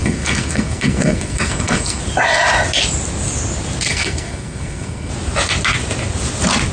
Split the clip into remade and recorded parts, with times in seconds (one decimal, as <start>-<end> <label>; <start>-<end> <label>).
0.0-2.0 remade; 2.0-3.9 recorded; 3.9-5.1 remade; 5.1-6.7 recorded